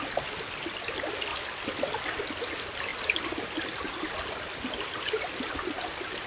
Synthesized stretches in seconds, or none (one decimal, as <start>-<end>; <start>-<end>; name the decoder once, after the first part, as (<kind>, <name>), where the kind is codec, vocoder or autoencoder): none